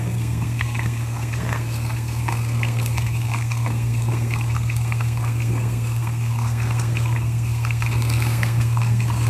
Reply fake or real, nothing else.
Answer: fake